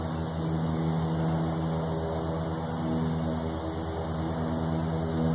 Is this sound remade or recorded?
recorded